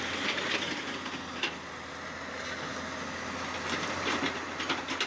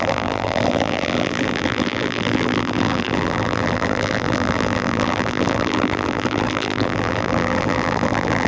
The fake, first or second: second